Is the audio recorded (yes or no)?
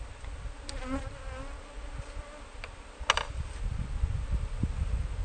yes